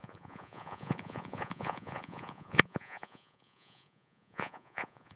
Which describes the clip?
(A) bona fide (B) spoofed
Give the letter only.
B